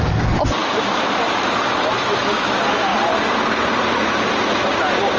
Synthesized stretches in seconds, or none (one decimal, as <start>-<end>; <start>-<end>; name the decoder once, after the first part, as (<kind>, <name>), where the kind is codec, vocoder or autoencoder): none